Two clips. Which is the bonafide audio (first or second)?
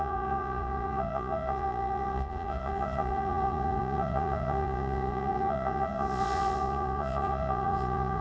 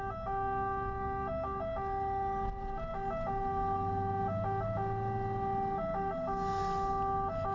second